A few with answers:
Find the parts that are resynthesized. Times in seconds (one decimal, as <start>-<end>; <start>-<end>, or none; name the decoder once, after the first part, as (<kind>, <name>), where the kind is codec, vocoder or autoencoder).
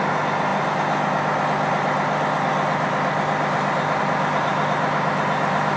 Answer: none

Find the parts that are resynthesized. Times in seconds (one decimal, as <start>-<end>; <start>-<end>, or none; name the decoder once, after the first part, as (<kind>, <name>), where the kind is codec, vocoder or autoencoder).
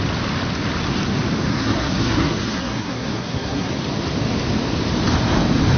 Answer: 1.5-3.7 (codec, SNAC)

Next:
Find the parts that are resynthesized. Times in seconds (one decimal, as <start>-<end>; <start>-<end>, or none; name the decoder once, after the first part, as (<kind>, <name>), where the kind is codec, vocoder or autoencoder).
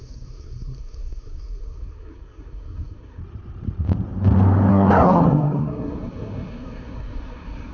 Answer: 0.0-3.2 (codec, SNAC); 4.7-7.7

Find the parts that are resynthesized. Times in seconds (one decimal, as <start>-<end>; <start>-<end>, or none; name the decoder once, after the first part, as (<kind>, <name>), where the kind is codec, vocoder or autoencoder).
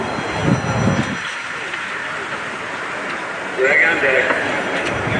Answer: none